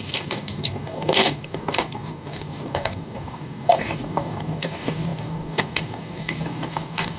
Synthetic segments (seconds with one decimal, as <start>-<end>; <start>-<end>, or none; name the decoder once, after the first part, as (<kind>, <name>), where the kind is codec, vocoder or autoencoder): 0.0-7.2 (codec, DAC)